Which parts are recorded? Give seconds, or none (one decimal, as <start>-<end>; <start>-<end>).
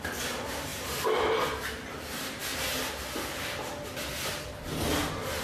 0.0-5.4